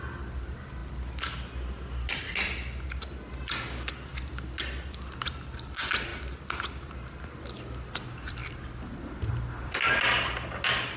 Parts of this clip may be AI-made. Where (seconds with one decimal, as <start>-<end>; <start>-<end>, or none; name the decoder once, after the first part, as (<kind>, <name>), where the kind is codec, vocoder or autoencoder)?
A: none